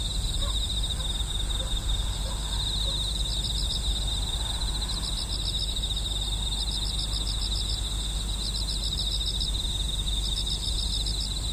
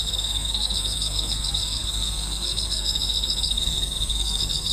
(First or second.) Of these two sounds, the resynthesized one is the second